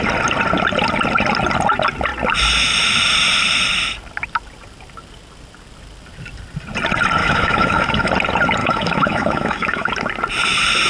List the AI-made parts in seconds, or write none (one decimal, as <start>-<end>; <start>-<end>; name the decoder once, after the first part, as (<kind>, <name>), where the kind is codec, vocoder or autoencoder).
7.2-8.1 (autoencoder, DAC-VAE); 8.6-9.9